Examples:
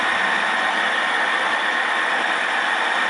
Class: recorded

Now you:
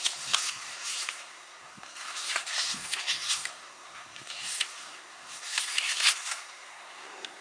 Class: remade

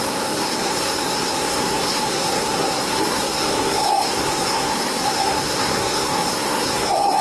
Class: remade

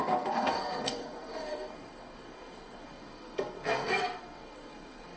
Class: remade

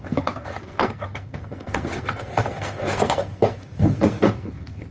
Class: remade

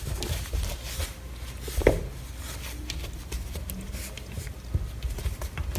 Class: recorded